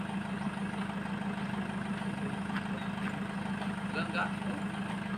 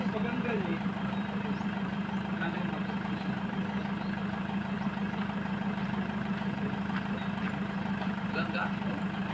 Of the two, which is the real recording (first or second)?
first